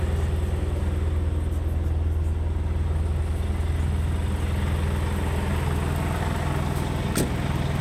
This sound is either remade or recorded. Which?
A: recorded